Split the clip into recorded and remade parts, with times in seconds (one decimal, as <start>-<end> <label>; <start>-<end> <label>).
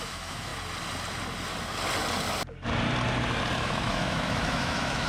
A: 0.0-0.5 remade; 0.5-3.6 recorded; 3.6-5.1 remade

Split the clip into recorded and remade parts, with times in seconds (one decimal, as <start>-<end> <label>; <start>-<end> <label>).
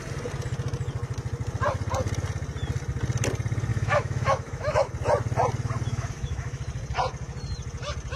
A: 0.0-3.7 recorded; 3.7-4.9 remade; 4.9-5.9 recorded; 5.9-6.6 remade; 6.6-8.2 recorded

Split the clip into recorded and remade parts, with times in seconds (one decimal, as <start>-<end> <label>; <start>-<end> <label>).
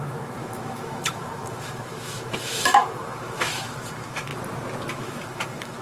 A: 0.0-4.3 remade; 4.3-4.9 recorded; 4.9-5.8 remade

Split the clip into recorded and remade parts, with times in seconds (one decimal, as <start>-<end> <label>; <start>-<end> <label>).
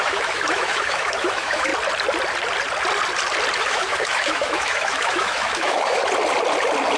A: 0.0-1.7 remade; 1.7-3.6 recorded; 3.6-6.0 remade; 6.0-7.0 recorded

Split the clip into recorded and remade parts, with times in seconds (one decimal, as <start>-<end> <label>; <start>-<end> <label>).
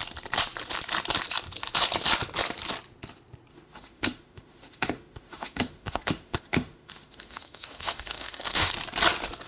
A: 0.0-3.5 recorded; 3.5-8.7 remade; 8.7-9.5 recorded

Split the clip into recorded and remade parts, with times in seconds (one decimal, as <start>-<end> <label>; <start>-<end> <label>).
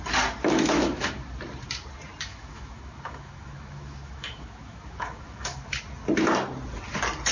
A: 0.0-0.4 recorded; 0.4-1.2 remade; 1.2-2.3 recorded; 2.3-5.8 remade; 5.8-7.3 recorded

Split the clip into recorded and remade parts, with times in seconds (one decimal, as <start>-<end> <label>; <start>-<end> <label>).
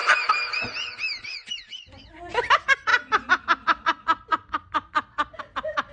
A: 0.0-5.9 recorded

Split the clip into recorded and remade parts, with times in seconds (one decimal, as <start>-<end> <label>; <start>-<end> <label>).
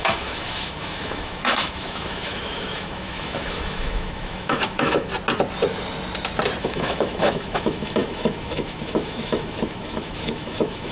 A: 0.0-5.1 remade; 5.1-6.6 recorded; 6.6-10.9 remade